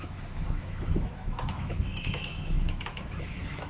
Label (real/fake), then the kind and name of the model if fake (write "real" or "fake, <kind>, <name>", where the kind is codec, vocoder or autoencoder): fake, autoencoder, DAC-VAE